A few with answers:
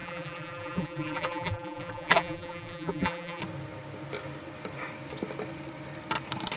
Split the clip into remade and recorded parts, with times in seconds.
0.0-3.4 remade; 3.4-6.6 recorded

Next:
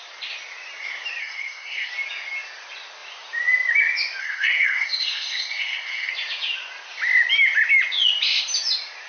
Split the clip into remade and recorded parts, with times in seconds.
0.0-1.2 recorded; 1.2-1.9 remade; 1.9-4.2 recorded; 4.2-6.1 remade; 6.1-9.1 recorded

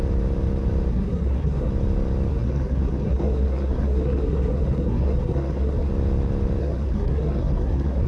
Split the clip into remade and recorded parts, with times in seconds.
0.0-0.9 recorded; 0.9-1.7 remade; 1.7-2.3 recorded; 2.3-5.9 remade; 5.9-6.6 recorded; 6.6-8.1 remade